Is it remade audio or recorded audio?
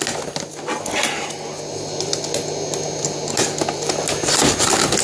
recorded